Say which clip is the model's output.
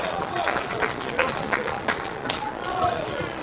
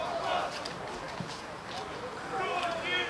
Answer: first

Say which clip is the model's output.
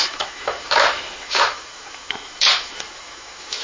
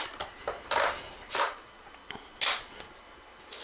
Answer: first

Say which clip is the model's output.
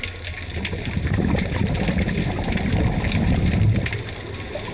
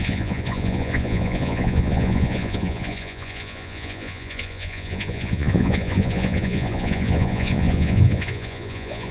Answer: second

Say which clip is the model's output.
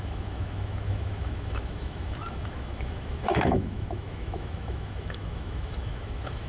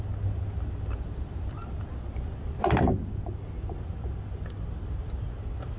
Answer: first